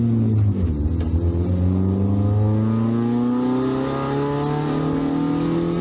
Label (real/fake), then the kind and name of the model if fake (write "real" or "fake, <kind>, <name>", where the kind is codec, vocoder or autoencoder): real